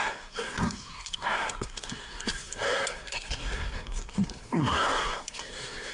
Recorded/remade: remade